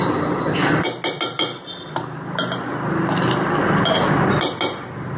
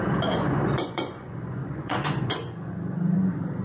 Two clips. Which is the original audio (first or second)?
first